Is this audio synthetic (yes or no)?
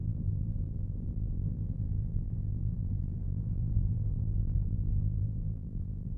yes